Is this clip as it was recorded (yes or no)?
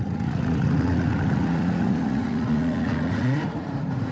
no